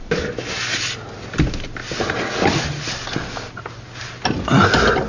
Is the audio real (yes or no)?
yes